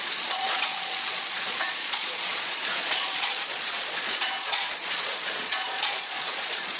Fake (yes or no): yes